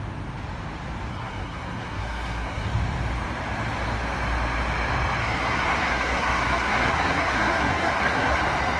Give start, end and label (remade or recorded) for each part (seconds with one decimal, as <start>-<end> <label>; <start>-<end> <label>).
0.0-1.1 recorded; 1.1-2.7 remade; 2.7-5.2 recorded; 5.2-8.4 remade; 8.4-8.8 recorded